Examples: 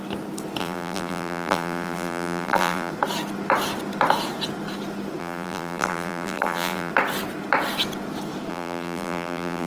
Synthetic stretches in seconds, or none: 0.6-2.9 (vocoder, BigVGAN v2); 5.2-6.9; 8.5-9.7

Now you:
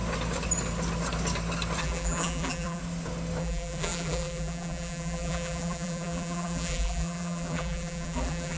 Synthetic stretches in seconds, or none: 1.8-2.8 (vocoder, BigVGAN v2); 3.4-8.6

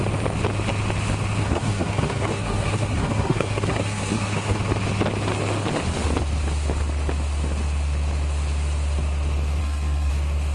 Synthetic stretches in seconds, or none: 1.4-4.6 (codec, SNAC); 9.6-10.1

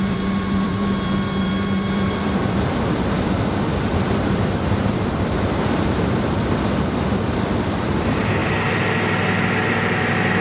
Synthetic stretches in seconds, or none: 0.0-8.4 (vocoder, BigVGAN v2)

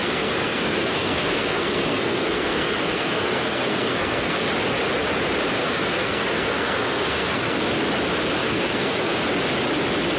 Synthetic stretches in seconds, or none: 0.0-4.5 (codec, SNAC); 5.6-7.6; 8.4-9.1

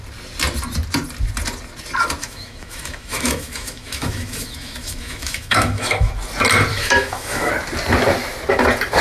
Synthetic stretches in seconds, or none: 2.2-6.1 (autoencoder, DAC-VAE); 6.7-7.5

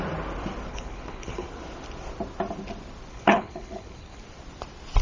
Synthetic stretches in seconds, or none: 0.7-1.5 (codec, HILCodec); 3.1-4.2